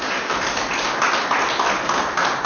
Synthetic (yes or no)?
no